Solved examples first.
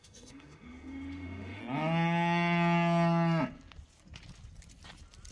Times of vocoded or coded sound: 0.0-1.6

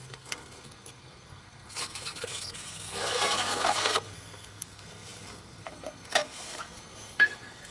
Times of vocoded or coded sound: 0.0-7.7

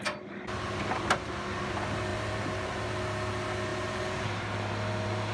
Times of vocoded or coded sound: 2.1-2.9; 3.7-5.3

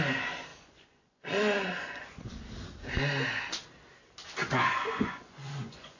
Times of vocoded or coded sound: 0.5-2.3; 4.4-6.0

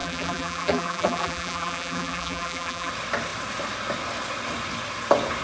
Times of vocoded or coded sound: 0.0-2.9

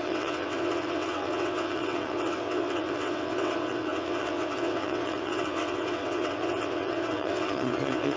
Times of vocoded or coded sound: 0.0-8.2